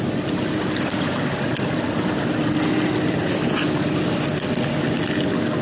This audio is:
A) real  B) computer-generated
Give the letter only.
A